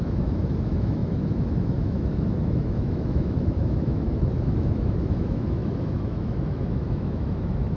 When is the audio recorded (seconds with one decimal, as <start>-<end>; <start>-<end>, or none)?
none

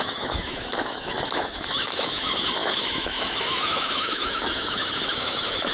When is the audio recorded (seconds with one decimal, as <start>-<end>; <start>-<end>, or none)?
none

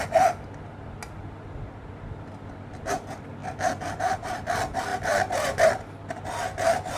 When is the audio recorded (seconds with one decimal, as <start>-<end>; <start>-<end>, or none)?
0.0-7.0

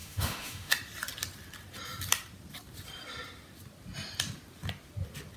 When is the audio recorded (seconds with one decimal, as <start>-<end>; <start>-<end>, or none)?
0.7-5.4

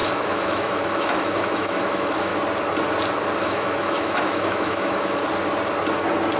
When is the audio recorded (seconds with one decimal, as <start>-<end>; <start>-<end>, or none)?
2.3-3.4; 5.2-6.4

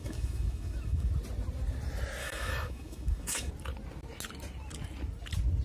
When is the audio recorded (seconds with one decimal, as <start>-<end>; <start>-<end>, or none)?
1.1-2.2; 3.5-5.6